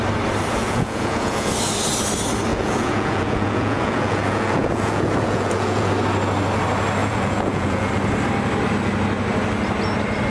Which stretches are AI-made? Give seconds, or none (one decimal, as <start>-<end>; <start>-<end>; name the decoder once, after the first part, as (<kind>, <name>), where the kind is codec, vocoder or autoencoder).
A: 0.6-1.5 (vocoder, Vocos); 2.5-5.9; 7.0-7.9